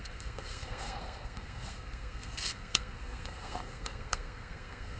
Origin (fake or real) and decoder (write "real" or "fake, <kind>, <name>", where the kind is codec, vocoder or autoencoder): fake, codec, SNAC